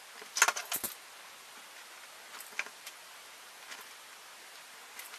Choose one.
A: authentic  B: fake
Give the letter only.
A